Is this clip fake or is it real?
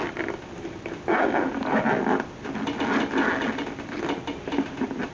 real